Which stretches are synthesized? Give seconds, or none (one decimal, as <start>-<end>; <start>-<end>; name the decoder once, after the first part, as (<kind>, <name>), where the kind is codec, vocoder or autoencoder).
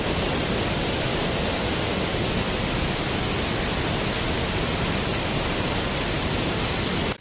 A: 0.0-1.1 (vocoder, BigVGAN v2); 5.3-7.2